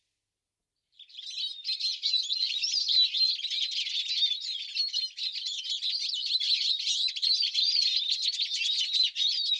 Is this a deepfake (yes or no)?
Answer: no